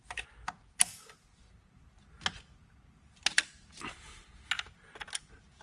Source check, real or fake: real